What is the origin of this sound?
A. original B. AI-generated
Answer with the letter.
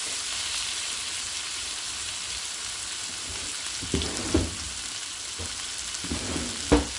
A